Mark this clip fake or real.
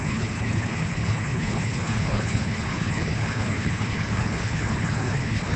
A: fake